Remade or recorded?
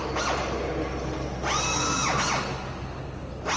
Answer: recorded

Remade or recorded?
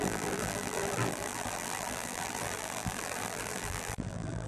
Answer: remade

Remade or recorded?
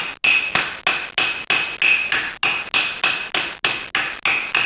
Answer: recorded